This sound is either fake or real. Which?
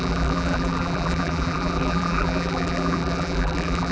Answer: fake